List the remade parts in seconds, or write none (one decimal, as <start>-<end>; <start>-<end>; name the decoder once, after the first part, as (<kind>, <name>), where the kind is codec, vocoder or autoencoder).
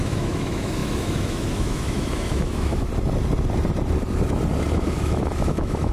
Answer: 0.0-2.9 (autoencoder, DAC-VAE); 4.7-5.9